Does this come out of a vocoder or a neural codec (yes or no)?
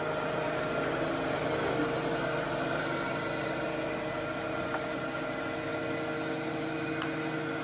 no